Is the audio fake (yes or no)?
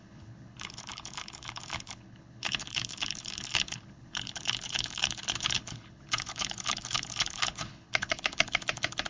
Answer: yes